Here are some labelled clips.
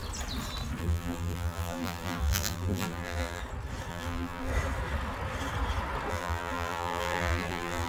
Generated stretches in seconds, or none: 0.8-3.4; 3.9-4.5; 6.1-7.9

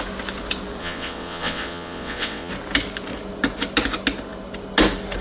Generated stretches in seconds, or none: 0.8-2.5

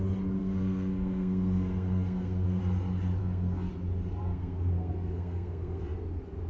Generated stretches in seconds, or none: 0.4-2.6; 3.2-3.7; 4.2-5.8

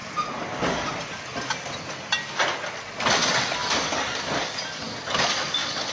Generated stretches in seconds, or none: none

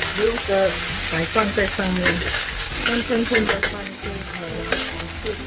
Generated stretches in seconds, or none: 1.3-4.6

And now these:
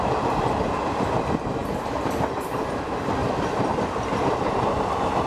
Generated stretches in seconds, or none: none

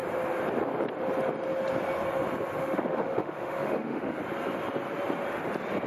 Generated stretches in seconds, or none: 2.6-4.2

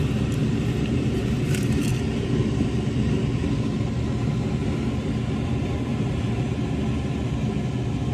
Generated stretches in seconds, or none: 0.4-1.9; 5.9-6.7